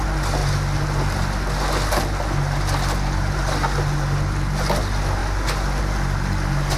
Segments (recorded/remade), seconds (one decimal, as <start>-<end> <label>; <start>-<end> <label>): 0.0-6.8 recorded